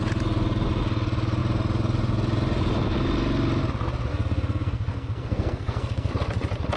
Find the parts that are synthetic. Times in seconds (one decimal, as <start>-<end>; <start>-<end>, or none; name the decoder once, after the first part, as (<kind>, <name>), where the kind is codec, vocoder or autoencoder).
4.1-6.1 (codec, SNAC)